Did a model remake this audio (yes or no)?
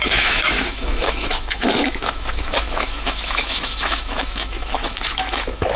yes